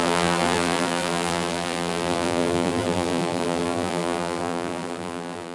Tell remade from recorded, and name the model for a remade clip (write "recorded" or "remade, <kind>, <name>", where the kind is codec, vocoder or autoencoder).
remade, vocoder, BigVGAN v2